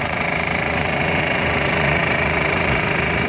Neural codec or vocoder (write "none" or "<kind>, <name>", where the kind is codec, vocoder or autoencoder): vocoder, Vocos